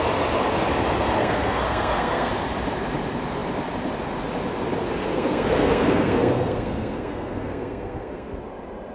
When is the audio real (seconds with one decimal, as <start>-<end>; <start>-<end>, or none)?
0.0-1.2; 2.3-5.0; 8.4-8.9